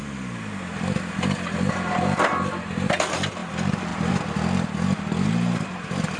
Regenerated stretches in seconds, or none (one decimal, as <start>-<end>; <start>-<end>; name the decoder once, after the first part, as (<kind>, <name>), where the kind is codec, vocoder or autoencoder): none